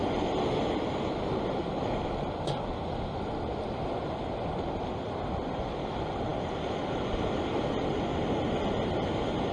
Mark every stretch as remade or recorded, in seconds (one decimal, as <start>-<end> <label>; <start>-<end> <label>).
0.0-9.5 recorded